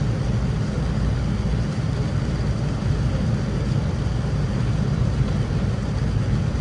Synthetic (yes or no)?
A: no